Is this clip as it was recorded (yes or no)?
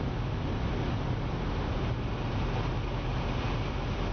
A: yes